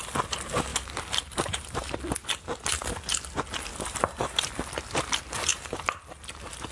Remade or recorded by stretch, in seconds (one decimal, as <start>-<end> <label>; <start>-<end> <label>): 0.0-0.7 recorded; 0.7-2.0 remade; 2.0-3.7 recorded; 3.7-4.5 remade; 4.5-5.5 recorded; 5.5-6.0 remade; 6.0-6.7 recorded